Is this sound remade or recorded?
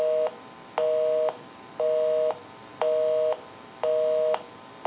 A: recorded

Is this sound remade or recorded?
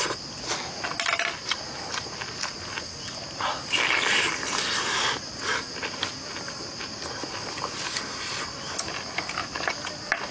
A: recorded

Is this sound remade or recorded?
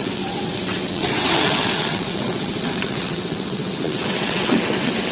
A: remade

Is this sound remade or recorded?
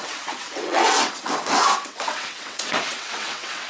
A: remade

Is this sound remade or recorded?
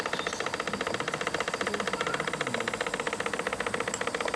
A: recorded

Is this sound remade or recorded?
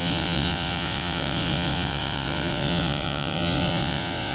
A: remade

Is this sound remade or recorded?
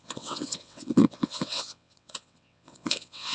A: remade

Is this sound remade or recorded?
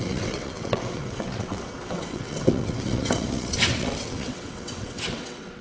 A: remade